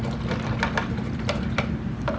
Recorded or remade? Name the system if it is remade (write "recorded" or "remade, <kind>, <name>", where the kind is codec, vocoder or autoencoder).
recorded